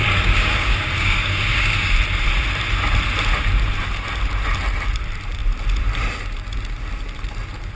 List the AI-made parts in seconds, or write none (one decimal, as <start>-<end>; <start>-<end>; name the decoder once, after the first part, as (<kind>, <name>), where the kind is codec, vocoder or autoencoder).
0.0-1.9 (codec, DAC)